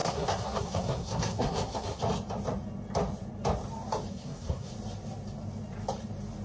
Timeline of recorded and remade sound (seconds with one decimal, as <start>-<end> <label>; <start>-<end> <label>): 0.0-2.0 remade; 2.0-4.1 recorded; 4.1-4.7 remade; 4.7-6.4 recorded